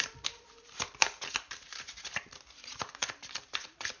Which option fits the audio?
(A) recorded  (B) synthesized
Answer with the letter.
B